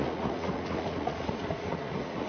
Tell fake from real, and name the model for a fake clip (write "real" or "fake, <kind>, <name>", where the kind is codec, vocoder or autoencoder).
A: fake, vocoder, Vocos